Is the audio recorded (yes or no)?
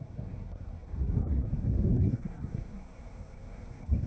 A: no